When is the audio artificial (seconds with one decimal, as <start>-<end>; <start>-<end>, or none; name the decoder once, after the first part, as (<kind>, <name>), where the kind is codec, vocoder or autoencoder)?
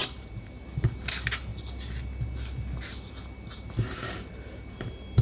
none